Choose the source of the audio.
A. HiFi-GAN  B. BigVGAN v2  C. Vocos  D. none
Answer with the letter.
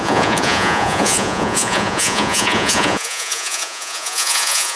C